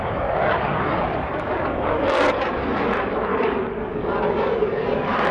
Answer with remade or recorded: remade